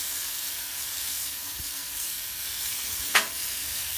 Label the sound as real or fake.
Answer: fake